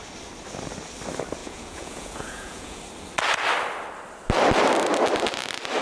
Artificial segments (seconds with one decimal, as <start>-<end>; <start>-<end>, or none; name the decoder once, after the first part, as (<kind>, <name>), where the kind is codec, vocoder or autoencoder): 1.4-2.8 (vocoder, Vocos)